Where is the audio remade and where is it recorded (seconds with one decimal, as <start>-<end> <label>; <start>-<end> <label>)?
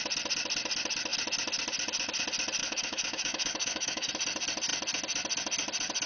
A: 0.0-2.6 recorded; 2.6-4.1 remade; 4.1-6.1 recorded